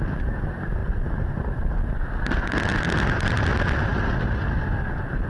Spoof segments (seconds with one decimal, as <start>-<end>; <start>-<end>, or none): none